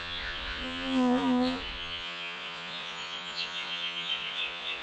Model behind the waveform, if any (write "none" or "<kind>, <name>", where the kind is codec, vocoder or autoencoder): vocoder, Vocos